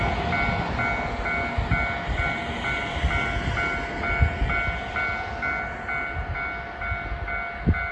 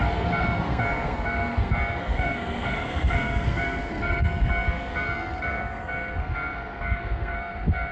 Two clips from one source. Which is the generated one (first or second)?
second